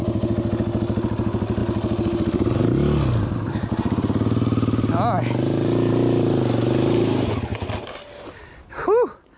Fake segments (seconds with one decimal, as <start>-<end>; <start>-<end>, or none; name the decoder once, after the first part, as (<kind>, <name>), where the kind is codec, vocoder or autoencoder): none